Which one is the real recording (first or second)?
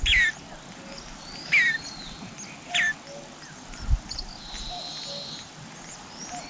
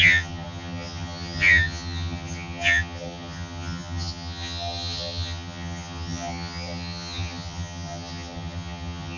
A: first